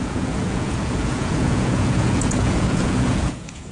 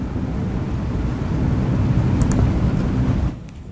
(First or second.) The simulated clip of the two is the first